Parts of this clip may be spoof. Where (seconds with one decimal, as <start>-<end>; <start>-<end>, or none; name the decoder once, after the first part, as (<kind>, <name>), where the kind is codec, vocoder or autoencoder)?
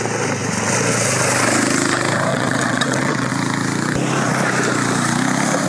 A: 2.3-3.3 (vocoder, WaveNeXt)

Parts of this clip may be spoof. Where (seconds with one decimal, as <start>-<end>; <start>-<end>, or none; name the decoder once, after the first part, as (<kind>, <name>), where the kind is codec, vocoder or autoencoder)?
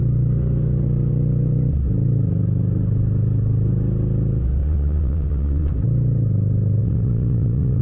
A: 4.6-5.7 (vocoder, WaveNeXt); 6.8-7.8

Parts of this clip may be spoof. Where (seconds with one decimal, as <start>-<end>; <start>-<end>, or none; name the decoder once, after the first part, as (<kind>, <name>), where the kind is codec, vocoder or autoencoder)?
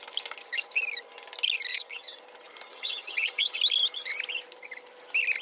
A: 1.7-2.2 (vocoder, WaveNeXt); 2.7-3.6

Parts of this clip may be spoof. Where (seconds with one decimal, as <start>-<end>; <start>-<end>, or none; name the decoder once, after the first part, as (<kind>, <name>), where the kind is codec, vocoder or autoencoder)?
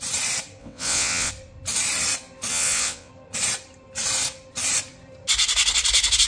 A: 0.6-1.3 (vocoder, WaveNeXt); 2.5-3.1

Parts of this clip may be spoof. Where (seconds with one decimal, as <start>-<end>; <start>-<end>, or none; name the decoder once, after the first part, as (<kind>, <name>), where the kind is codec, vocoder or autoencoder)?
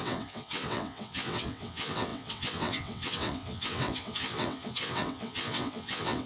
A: 0.0-6.3 (vocoder, WaveNeXt)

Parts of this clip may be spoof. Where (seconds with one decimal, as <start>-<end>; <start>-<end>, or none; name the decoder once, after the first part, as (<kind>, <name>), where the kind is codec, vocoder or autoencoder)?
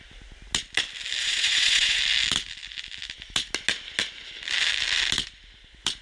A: 1.2-2.0 (vocoder, WaveNeXt)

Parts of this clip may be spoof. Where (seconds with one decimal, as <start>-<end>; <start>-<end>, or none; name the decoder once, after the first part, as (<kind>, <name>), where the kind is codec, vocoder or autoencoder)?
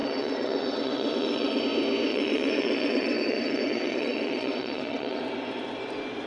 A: 0.0-1.6 (vocoder, WaveNeXt); 2.1-5.2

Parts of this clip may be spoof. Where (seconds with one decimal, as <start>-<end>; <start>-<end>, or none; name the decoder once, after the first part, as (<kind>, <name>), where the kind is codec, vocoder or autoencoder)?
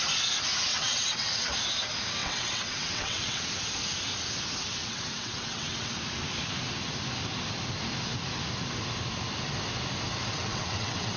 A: 0.7-1.3 (vocoder, WaveNeXt); 2.2-3.5; 4.8-6.0; 10.3-11.2